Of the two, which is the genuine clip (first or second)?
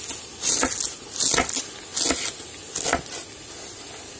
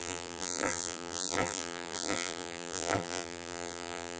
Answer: first